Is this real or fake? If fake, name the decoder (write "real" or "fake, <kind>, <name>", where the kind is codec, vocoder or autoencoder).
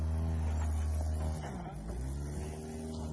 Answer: real